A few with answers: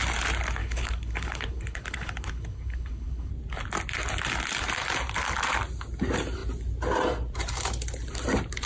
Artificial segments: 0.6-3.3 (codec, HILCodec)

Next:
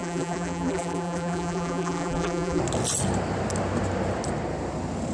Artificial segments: 0.0-2.6 (vocoder, BigVGAN v2)

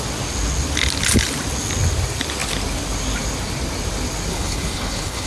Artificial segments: 4.3-5.3 (codec, HILCodec)

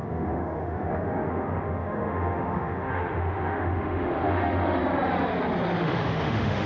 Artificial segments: 0.0-4.8 (autoencoder, DAC-VAE); 5.8-6.7

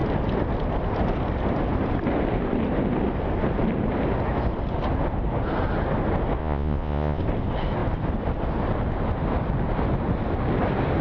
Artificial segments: 6.4-7.2 (vocoder, Vocos)

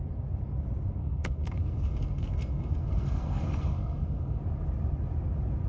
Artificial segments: 1.0-4.4 (codec, SNAC)

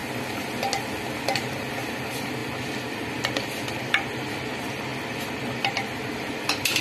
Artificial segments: none